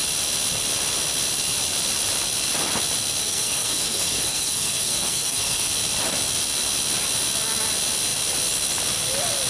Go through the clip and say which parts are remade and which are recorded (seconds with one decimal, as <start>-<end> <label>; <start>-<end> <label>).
0.0-3.2 recorded; 3.2-5.7 remade; 5.7-9.5 recorded